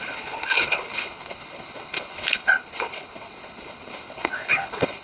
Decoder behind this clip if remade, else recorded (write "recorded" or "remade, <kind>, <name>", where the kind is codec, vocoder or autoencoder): remade, codec, HILCodec